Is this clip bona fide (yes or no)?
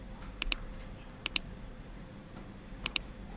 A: no